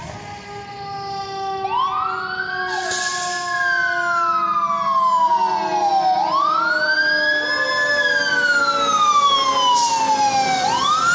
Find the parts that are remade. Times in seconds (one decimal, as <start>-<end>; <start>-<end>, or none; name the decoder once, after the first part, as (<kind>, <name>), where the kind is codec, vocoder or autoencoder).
none